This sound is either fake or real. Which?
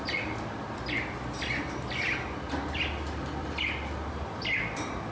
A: real